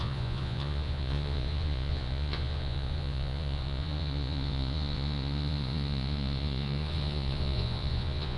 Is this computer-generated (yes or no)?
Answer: yes